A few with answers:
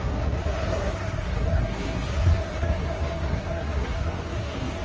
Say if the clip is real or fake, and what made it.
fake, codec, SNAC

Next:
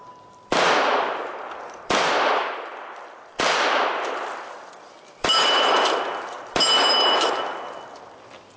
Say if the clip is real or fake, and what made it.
fake, vocoder, BigVGAN v2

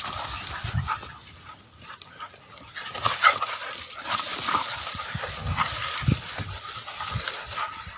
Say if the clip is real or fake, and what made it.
real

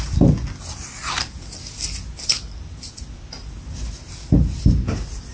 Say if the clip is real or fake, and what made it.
real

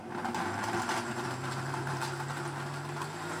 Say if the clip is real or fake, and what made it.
real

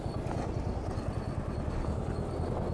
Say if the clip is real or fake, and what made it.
real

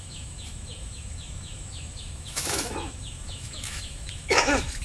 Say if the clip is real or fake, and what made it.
fake, autoencoder, DAC-VAE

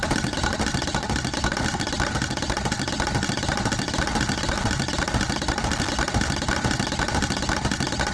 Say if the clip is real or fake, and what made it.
real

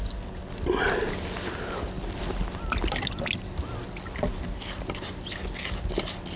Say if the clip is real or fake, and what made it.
real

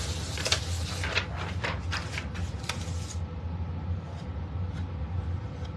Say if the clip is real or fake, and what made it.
real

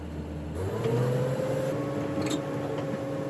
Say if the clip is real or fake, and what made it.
real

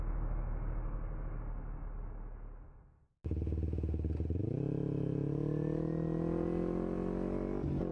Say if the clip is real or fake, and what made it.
real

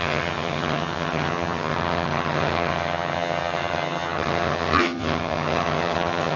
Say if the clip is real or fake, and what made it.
fake, vocoder, HiFi-GAN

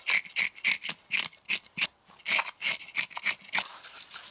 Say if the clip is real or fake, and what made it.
real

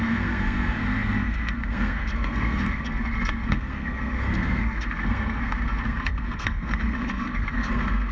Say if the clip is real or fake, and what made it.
fake, codec, SNAC